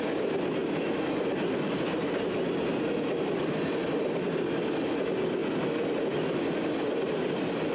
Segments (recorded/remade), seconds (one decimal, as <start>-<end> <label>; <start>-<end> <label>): 0.0-7.7 recorded